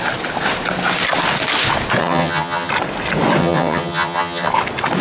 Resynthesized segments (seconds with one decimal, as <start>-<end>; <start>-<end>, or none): 2.0-2.7; 3.4-4.5